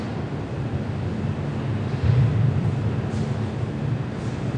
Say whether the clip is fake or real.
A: real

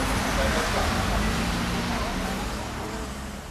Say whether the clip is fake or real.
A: real